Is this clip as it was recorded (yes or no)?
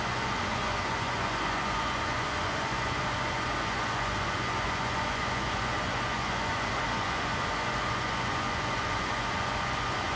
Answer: no